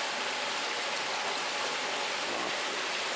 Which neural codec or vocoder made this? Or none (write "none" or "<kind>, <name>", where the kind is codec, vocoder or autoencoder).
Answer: none